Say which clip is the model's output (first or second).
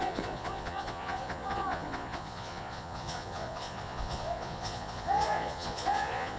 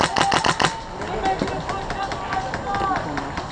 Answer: first